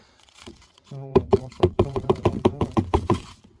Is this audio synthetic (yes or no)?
yes